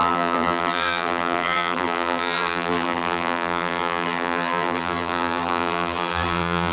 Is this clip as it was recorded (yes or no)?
no